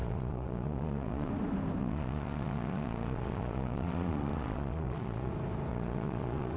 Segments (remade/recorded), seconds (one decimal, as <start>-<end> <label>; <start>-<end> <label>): 0.0-1.3 remade; 1.3-1.8 recorded; 1.8-5.3 remade; 5.3-5.7 recorded; 5.7-6.6 remade